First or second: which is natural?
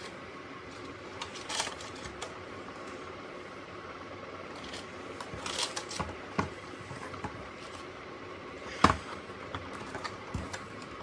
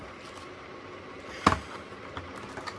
second